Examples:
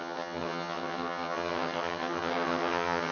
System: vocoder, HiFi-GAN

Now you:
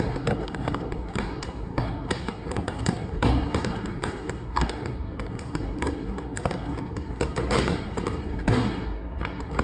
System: codec, SNAC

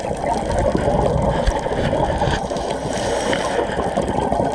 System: none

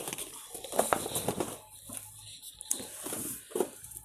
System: none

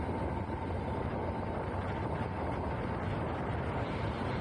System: none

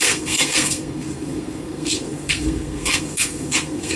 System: codec, SNAC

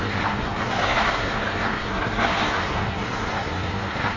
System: codec, SNAC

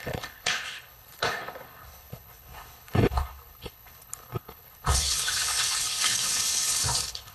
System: codec, HILCodec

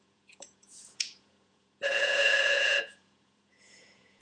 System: vocoder, Vocos